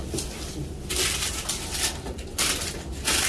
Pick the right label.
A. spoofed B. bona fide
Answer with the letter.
B